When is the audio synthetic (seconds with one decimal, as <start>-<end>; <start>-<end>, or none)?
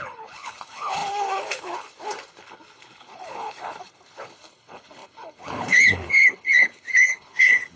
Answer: 0.0-7.8